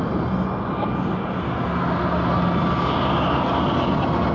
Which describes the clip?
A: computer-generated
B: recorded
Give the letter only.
B